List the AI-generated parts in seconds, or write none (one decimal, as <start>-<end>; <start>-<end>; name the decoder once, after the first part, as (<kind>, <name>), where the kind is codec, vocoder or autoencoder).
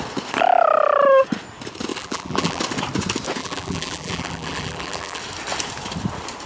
1.9-2.6 (vocoder, BigVGAN v2); 3.4-5.2